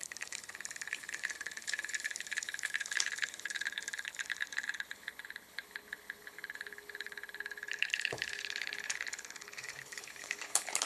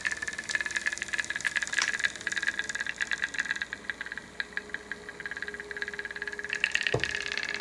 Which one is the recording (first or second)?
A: second